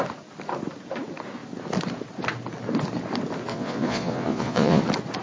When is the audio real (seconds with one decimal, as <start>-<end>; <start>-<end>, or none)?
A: 0.0-3.5; 4.8-5.2